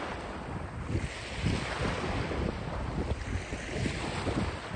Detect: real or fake real